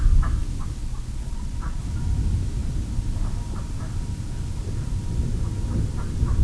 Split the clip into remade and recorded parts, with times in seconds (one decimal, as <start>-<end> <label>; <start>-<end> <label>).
0.0-0.8 recorded; 0.8-1.8 remade; 1.8-6.4 recorded